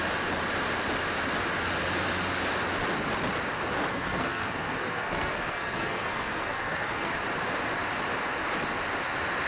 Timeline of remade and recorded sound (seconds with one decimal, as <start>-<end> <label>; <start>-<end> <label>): 0.0-3.9 recorded; 3.9-7.1 remade; 7.1-9.5 recorded